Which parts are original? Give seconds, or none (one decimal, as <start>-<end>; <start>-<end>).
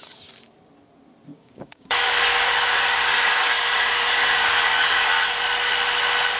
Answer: 0.0-1.3; 5.1-6.4